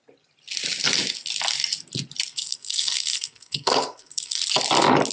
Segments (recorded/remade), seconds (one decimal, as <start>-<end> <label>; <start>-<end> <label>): 0.0-2.3 recorded; 2.3-4.4 remade; 4.4-5.1 recorded